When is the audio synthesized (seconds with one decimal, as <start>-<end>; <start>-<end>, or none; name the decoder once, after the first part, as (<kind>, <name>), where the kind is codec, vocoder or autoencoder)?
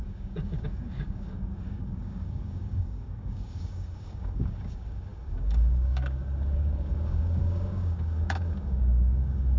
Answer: 0.0-9.6 (codec, DAC)